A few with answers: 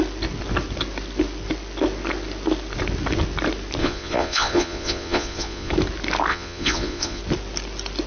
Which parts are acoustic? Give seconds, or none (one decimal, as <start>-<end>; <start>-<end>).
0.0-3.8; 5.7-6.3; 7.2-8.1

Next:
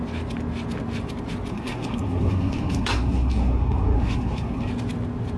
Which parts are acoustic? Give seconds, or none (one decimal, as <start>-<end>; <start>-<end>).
0.0-1.5; 4.7-5.4

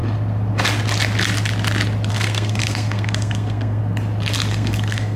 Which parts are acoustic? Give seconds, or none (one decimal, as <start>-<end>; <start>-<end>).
0.0-2.1; 3.8-4.5

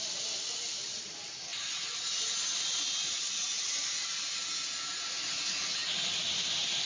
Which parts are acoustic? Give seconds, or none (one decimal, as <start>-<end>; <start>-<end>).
0.0-6.9

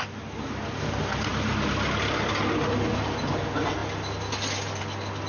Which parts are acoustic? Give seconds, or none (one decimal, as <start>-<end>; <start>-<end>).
0.0-5.3

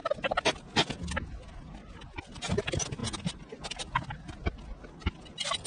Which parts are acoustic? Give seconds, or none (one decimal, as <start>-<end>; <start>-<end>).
0.0-5.7